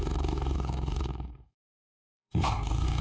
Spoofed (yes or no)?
yes